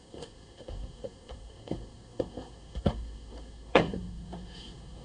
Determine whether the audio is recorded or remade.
remade